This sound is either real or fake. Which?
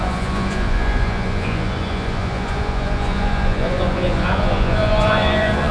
fake